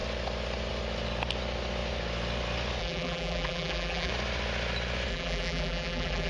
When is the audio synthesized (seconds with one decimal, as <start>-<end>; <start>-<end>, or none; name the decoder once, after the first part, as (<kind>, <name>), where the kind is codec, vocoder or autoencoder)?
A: 2.8-4.1 (vocoder, BigVGAN v2); 5.1-6.3